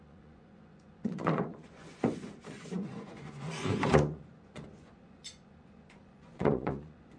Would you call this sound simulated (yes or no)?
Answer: yes